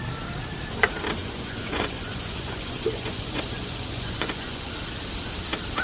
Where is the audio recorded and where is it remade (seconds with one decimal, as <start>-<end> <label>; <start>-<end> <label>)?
0.0-1.2 recorded; 1.2-4.7 remade; 4.7-5.8 recorded